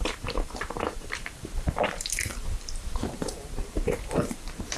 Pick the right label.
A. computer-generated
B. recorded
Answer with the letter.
A